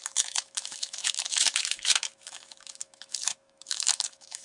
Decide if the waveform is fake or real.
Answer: fake